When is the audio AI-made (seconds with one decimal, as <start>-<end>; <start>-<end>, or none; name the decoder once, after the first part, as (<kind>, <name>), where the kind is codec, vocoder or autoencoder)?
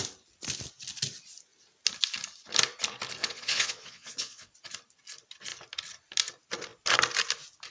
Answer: 3.2-4.5 (vocoder, Vocos)